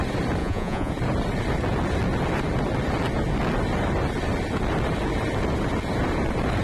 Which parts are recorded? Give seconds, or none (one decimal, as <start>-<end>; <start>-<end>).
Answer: 0.0-0.4; 0.9-6.6